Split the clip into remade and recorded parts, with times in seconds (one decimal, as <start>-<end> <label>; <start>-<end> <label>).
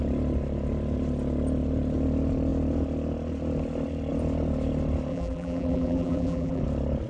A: 0.0-5.1 recorded; 5.1-6.6 remade; 6.6-7.1 recorded